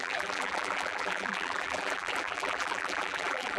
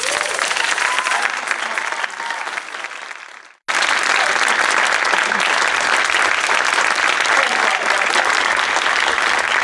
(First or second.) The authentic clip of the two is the second